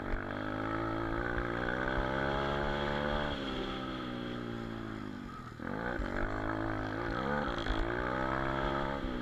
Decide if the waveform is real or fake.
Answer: real